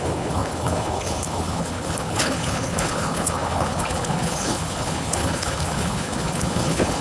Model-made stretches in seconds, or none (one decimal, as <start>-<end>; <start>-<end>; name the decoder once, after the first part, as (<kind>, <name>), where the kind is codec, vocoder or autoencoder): 0.0-7.0 (codec, HILCodec)